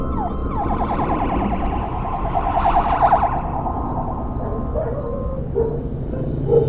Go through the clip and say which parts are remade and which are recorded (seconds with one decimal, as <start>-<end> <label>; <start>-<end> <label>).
0.0-0.4 recorded; 0.4-2.9 remade; 2.9-6.7 recorded